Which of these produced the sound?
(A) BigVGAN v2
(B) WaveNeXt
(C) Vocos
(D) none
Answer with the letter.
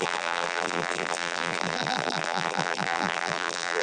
A